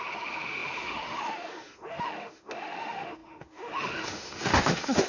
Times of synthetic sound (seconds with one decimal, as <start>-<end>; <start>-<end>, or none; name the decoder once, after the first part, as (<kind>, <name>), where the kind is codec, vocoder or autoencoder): 0.0-5.1 (autoencoder, DAC-VAE)